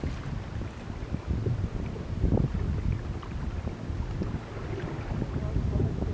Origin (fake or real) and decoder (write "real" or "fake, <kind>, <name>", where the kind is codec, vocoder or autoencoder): real